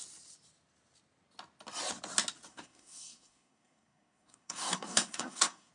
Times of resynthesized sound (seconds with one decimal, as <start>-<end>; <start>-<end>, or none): 2.5-5.7